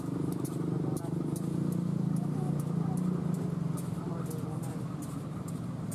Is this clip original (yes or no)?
yes